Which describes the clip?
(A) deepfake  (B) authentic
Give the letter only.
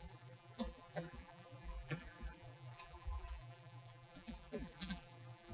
A